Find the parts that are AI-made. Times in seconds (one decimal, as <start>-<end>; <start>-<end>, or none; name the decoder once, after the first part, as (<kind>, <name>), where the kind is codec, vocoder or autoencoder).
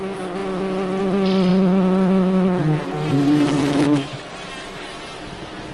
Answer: 3.6-4.2 (autoencoder, DAC-VAE)